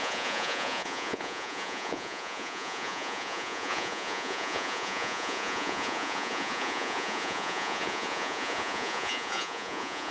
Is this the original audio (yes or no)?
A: no